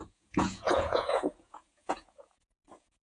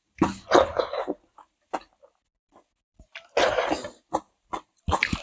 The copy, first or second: first